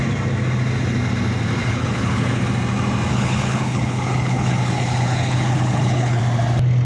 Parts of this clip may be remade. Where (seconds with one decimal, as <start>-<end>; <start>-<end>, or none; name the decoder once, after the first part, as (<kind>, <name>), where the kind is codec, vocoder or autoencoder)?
1.6-2.4 (codec, HILCodec); 3.1-6.2